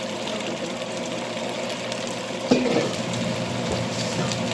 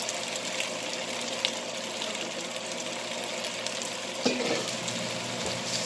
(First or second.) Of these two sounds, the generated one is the first